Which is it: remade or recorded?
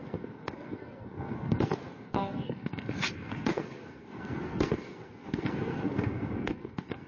remade